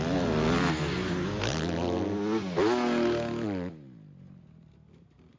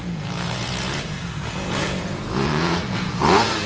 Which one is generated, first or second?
second